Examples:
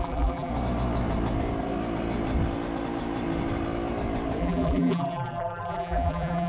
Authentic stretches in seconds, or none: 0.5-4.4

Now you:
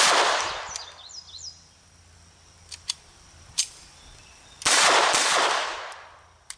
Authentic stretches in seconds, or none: 0.0-6.6

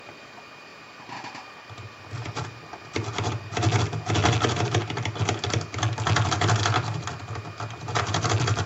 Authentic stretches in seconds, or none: 0.0-0.7; 2.0-8.7

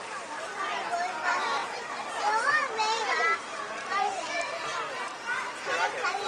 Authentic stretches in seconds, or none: 0.0-1.6; 2.1-3.5; 5.0-6.3

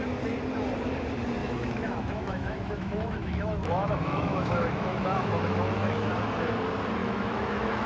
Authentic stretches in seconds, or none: 0.0-1.4; 6.1-7.0

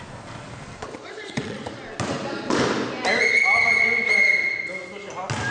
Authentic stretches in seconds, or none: 0.0-0.8; 1.6-5.5

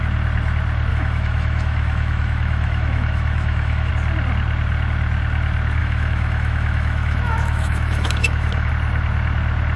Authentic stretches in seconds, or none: 0.0-0.9; 3.9-5.8; 8.7-9.8